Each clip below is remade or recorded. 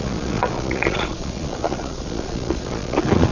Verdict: remade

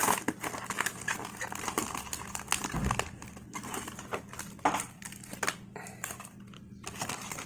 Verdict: recorded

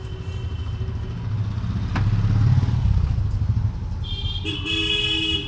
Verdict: recorded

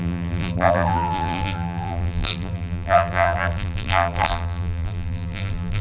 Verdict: remade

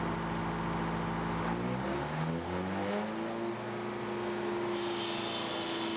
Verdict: recorded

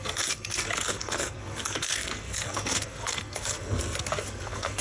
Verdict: remade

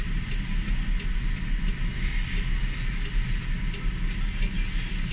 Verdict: recorded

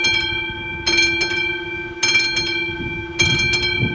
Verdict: recorded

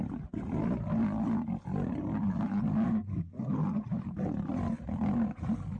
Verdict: recorded